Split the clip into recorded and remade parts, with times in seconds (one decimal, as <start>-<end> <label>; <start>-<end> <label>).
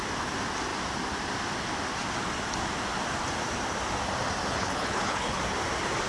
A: 0.0-4.5 recorded; 4.5-5.4 remade; 5.4-6.1 recorded